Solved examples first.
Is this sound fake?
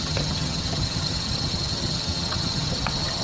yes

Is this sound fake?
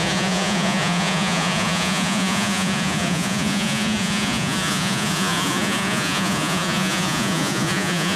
yes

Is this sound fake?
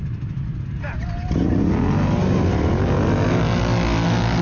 no